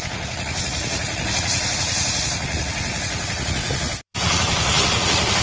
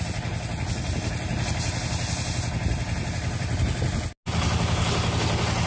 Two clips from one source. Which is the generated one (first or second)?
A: first